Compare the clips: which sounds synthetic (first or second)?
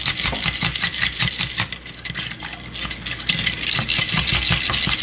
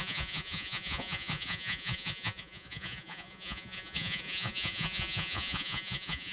second